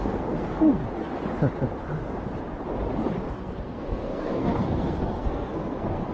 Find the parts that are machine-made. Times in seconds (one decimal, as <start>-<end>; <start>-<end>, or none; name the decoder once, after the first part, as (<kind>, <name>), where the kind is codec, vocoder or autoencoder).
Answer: 0.0-0.8 (codec, SNAC); 3.3-6.1